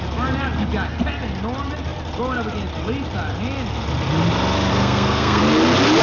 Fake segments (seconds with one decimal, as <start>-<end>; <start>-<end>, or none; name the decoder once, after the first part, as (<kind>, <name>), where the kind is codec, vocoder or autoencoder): 4.7-5.4 (codec, SNAC)